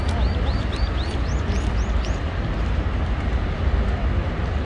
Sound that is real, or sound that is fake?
real